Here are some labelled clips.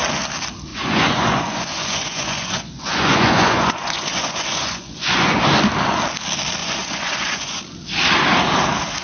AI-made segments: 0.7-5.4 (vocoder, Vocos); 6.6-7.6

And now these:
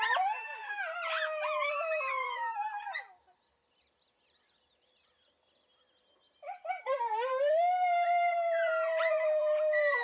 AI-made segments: 0.0-2.9 (vocoder, BigVGAN v2); 6.8-10.0

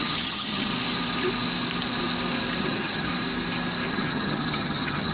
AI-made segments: 0.0-0.7 (vocoder, HiFi-GAN); 2.6-3.1; 3.9-5.1

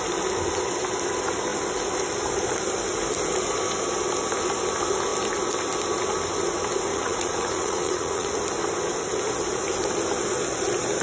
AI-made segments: 6.9-8.3 (vocoder, Vocos)

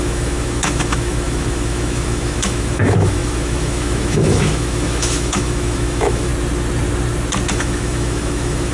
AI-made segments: 0.0-6.3 (autoencoder, DAC-VAE); 7.5-8.7